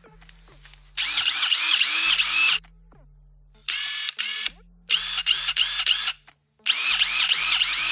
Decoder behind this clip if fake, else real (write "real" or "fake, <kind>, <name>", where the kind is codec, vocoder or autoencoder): real